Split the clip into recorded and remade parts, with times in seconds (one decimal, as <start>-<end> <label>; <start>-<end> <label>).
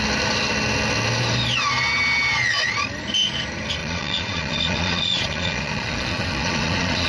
0.0-3.8 recorded; 3.8-7.1 remade